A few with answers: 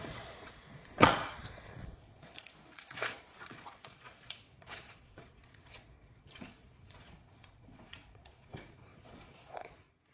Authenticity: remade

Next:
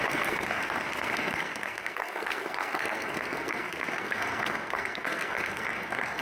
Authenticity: remade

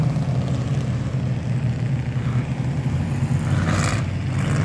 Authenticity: recorded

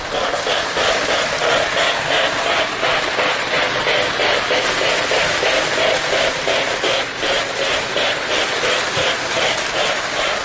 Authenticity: recorded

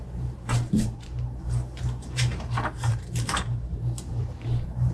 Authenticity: remade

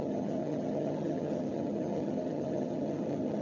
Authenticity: remade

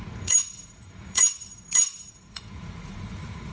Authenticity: remade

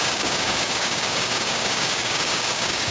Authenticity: remade